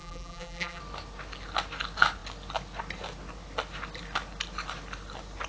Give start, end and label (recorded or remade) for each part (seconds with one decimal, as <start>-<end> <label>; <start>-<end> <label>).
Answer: 0.0-0.8 remade; 0.8-5.5 recorded

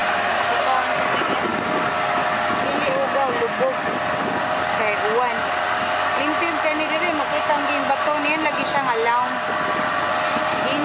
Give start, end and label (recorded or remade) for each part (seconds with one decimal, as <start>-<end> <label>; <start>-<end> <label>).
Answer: 0.0-0.5 remade; 0.5-10.8 recorded

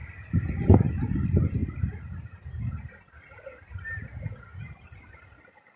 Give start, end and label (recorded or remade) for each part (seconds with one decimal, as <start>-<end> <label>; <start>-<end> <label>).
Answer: 0.0-0.5 remade; 0.5-5.8 recorded